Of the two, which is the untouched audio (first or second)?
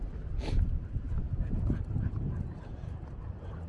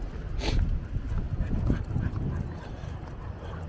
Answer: second